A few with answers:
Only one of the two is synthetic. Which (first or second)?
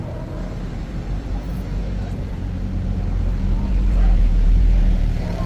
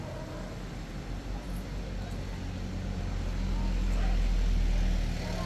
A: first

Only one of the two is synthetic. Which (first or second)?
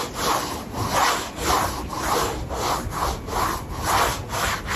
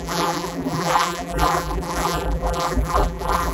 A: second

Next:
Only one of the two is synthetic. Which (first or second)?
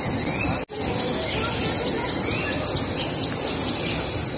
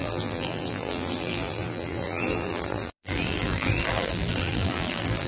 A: second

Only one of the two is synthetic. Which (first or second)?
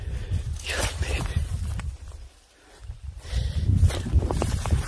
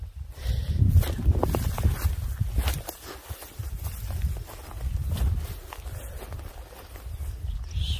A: first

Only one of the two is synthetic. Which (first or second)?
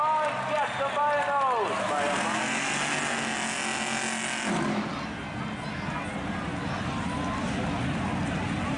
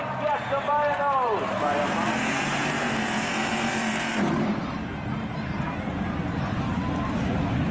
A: second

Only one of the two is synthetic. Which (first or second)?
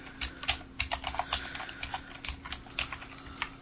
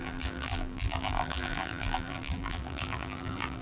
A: second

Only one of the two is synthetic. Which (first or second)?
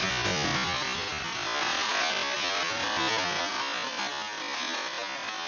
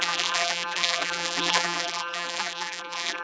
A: second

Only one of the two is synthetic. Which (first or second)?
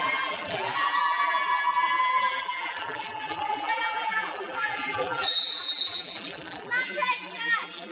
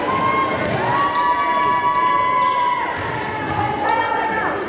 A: first